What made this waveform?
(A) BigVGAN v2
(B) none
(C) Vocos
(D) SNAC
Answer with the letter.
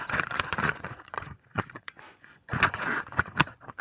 C